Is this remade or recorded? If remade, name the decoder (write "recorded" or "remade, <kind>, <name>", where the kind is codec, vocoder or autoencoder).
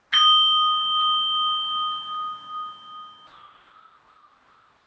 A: recorded